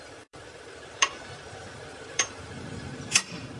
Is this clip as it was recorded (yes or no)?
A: no